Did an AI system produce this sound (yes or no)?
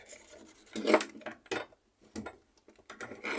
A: no